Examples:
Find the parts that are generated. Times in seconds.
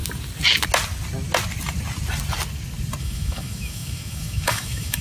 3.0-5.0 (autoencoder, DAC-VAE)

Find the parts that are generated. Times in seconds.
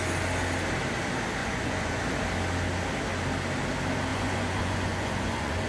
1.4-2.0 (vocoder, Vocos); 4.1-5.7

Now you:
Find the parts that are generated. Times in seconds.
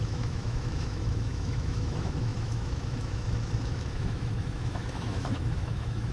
0.0-6.1 (autoencoder, DAC-VAE)